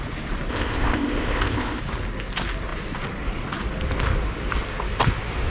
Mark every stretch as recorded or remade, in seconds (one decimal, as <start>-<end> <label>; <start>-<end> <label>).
0.0-0.5 recorded; 0.5-1.8 remade; 1.8-5.5 recorded